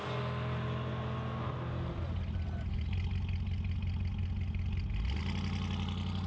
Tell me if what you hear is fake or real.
real